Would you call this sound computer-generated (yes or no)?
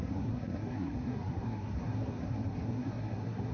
yes